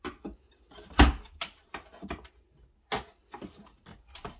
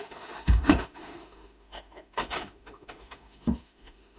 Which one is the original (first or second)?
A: first